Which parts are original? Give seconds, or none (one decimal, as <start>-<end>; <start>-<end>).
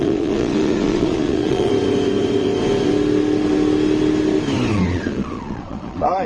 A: 1.7-4.7